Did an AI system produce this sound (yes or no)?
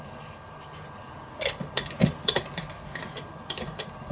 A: yes